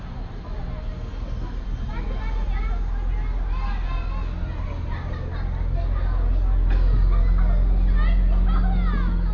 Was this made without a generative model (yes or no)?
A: yes